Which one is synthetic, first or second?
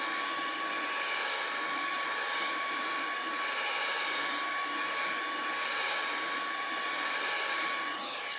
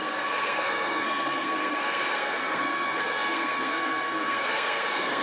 second